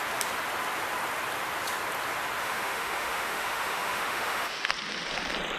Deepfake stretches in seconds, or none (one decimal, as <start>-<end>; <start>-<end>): 2.4-4.7